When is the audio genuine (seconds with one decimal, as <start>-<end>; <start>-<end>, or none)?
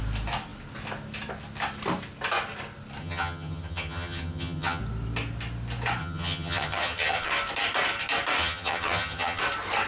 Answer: 0.0-3.0; 4.8-6.0; 7.3-8.4; 9.4-9.9